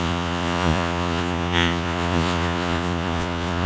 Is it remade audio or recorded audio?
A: remade